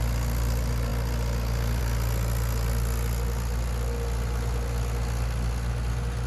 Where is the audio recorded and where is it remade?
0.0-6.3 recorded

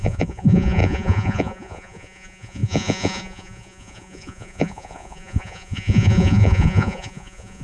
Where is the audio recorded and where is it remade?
0.0-7.6 remade

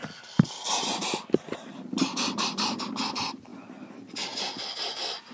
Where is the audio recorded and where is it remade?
0.0-5.3 recorded

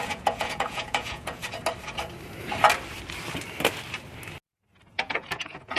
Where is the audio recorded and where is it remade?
0.0-1.4 remade; 1.4-4.9 recorded; 4.9-5.8 remade

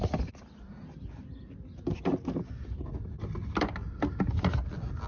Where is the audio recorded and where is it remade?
0.0-5.1 recorded

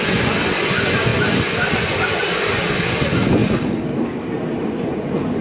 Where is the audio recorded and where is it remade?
0.0-3.4 remade; 3.4-4.7 recorded; 4.7-5.4 remade

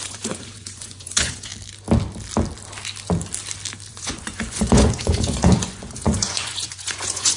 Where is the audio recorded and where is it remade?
0.0-1.5 remade; 1.5-3.9 recorded; 3.9-7.4 remade